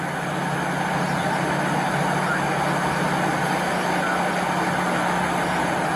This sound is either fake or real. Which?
real